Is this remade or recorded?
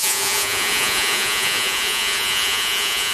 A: remade